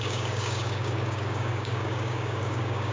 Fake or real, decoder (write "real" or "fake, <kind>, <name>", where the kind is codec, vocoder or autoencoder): fake, codec, DAC